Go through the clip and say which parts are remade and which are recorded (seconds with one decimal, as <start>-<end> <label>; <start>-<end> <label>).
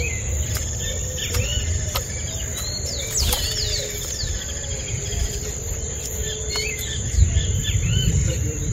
0.0-2.5 recorded; 2.5-3.0 remade; 3.0-4.7 recorded; 4.7-8.7 remade